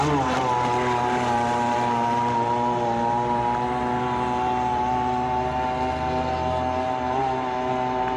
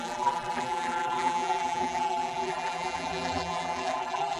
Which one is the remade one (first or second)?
second